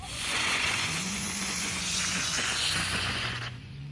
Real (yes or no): no